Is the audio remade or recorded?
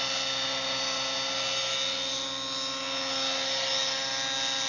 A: recorded